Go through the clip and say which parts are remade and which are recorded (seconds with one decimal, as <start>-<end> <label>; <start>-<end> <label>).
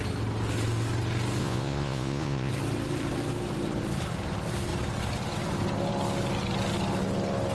0.0-1.4 recorded; 1.4-2.5 remade; 2.5-7.5 recorded